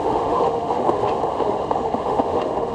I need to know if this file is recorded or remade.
remade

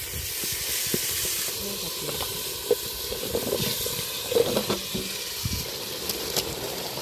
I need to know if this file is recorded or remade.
recorded